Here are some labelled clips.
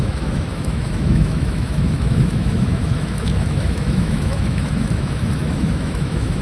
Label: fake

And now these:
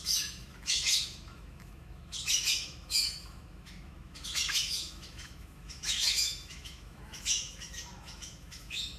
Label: fake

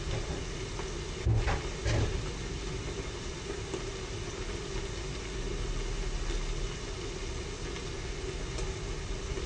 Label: real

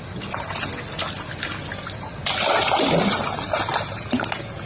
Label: real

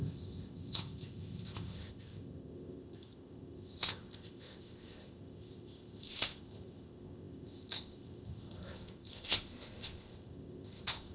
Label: fake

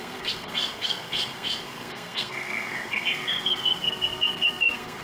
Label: fake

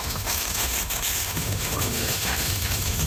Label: fake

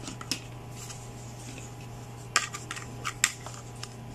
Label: real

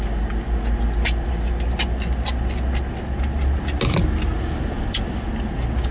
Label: real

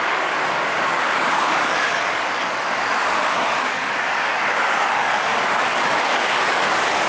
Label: fake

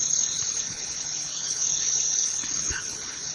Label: fake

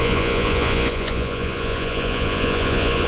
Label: fake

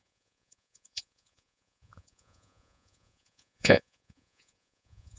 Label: fake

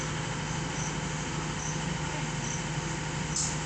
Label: real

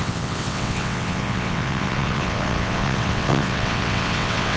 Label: fake